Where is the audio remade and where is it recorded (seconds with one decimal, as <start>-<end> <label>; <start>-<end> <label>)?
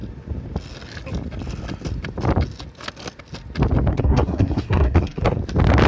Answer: 0.0-3.9 recorded; 3.9-5.4 remade; 5.4-5.9 recorded